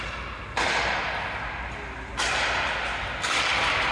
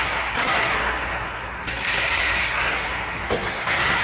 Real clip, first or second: first